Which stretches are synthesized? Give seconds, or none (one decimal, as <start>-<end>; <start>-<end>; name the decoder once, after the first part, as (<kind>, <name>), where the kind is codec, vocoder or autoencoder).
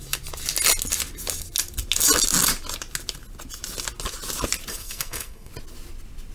4.7-5.5 (codec, SNAC)